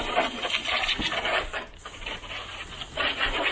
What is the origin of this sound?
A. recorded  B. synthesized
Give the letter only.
A